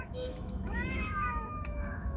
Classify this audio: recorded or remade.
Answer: remade